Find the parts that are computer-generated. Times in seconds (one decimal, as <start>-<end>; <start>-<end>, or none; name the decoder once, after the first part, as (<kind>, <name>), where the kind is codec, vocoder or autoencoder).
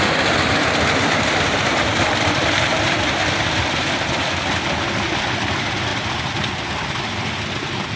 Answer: 0.0-5.9 (vocoder, BigVGAN v2); 6.5-8.0